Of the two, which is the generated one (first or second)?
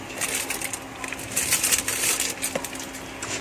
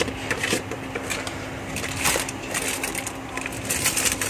second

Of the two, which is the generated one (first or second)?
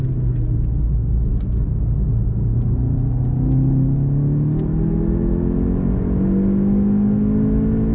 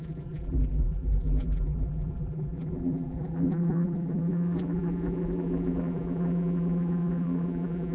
second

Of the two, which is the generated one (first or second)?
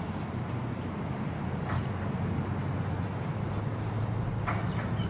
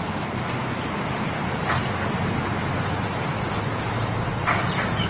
second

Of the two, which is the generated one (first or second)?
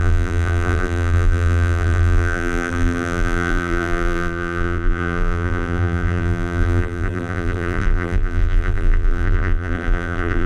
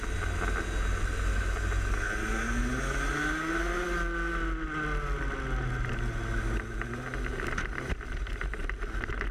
first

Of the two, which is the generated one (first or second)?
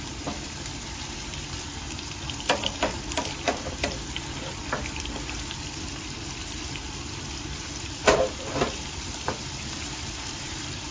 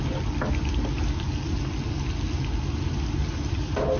first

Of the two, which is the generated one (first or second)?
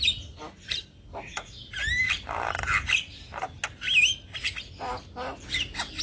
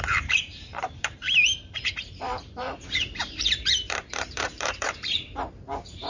second